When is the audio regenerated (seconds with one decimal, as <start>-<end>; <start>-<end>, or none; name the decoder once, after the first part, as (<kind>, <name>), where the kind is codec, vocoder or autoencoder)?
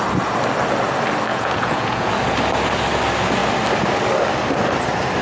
1.3-2.1 (vocoder, Vocos)